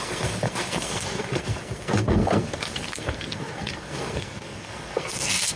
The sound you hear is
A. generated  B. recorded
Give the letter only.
A